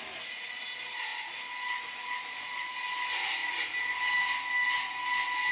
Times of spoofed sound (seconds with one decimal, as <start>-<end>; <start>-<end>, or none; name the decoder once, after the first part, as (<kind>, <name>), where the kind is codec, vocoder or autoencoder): 0.0-1.1 (vocoder, BigVGAN v2); 2.0-3.4